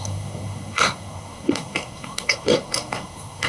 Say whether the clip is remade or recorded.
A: remade